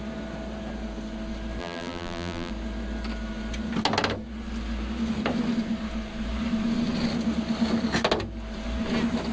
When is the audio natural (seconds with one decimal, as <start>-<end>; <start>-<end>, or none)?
0.0-1.6; 2.5-9.3